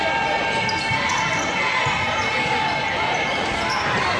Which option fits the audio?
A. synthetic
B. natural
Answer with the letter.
B